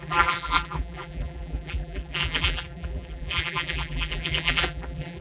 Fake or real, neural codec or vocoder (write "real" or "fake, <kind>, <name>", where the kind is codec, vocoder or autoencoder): fake, vocoder, BigVGAN v2